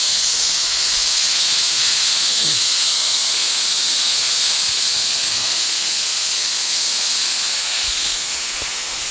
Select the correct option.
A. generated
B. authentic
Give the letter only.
A